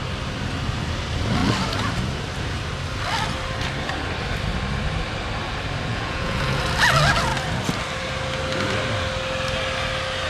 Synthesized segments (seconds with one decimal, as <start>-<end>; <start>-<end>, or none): 5.9-6.6